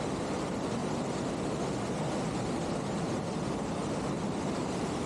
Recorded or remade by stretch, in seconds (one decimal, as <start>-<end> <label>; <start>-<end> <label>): 0.0-0.8 remade; 0.8-3.9 recorded; 3.9-5.1 remade